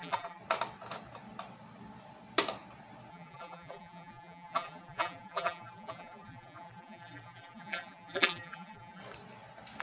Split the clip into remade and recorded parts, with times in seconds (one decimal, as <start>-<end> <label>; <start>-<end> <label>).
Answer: 0.0-0.4 remade; 0.4-3.1 recorded; 3.1-9.0 remade; 9.0-9.8 recorded